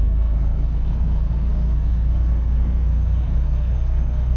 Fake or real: fake